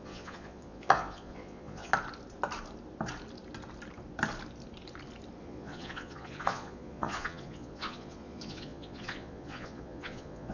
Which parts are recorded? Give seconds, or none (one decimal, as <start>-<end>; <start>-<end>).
1.9-5.4

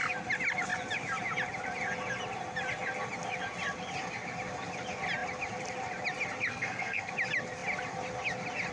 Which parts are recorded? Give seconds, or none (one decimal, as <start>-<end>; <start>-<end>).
0.0-6.5; 7.1-8.7

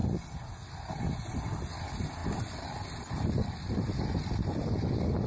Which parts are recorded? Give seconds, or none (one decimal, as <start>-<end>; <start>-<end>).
0.0-5.3